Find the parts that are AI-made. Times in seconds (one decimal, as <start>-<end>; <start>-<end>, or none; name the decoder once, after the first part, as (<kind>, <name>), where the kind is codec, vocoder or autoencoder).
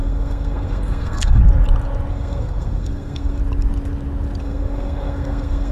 0.0-1.4 (codec, SNAC); 2.1-3.4; 4.4-5.7